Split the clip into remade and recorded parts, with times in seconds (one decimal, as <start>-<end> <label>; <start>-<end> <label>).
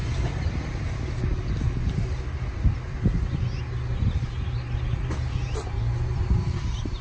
0.0-7.0 recorded